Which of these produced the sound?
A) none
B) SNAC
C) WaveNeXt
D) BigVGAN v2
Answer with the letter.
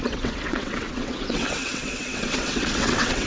C